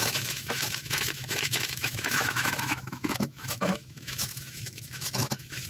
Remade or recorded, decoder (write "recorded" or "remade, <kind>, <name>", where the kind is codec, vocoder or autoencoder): remade, autoencoder, DAC-VAE